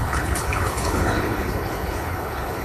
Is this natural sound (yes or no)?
no